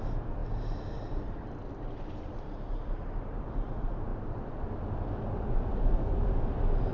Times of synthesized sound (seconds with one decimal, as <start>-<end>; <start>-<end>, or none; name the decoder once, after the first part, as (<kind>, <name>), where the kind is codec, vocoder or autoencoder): none